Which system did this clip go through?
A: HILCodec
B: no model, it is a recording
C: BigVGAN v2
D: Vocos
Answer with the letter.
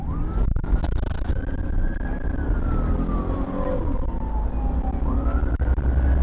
B